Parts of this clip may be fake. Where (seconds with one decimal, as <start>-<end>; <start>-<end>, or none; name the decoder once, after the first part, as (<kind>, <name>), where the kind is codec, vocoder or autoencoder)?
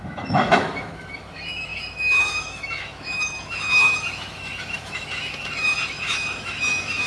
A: 0.0-7.1 (autoencoder, DAC-VAE)